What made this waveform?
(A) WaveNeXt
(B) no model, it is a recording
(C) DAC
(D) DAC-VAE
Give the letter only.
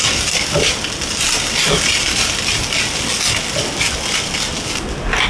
B